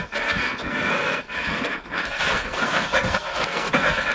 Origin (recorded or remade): remade